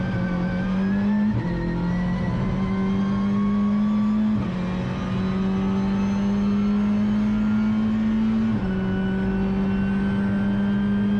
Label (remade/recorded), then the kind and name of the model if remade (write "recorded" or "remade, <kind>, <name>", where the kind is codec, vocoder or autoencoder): recorded